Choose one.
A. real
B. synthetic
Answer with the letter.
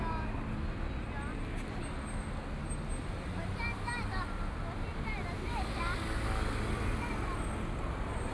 A